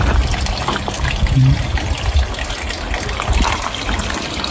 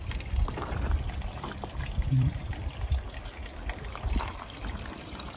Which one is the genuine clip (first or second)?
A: first